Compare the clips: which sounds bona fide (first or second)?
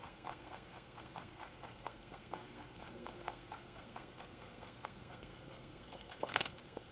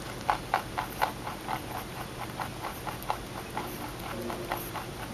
second